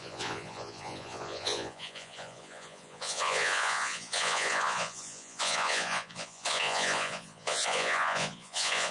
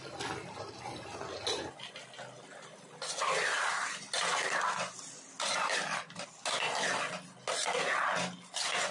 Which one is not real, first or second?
first